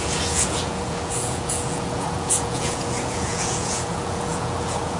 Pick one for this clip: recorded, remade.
remade